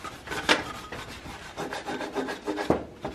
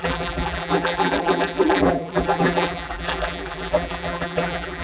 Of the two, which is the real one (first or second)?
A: first